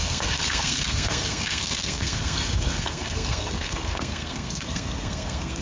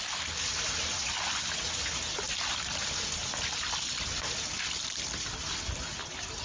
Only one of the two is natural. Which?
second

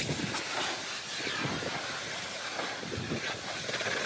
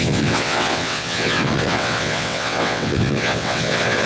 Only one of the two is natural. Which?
first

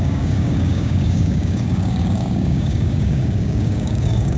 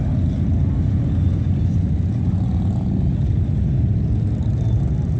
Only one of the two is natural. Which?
second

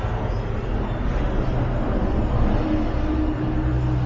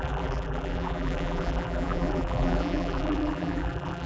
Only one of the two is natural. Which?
first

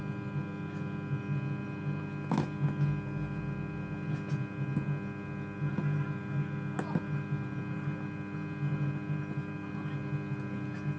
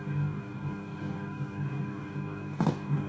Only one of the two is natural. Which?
first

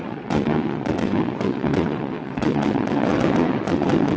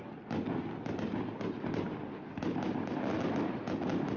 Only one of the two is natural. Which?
second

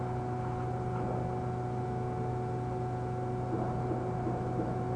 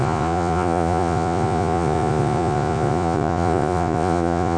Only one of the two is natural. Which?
first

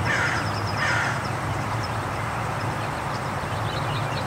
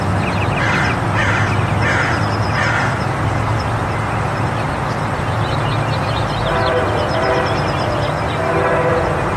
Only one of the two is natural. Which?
second